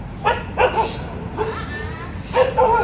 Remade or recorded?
recorded